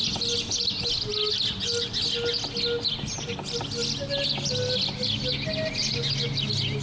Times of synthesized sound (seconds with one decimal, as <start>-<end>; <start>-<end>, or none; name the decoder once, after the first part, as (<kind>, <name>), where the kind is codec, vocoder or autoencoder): none

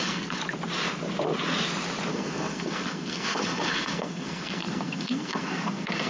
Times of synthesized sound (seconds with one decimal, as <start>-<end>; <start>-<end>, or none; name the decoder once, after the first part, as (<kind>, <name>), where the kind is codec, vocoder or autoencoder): 0.0-0.4 (codec, SNAC); 2.1-6.1